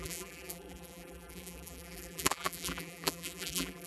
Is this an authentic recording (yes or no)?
no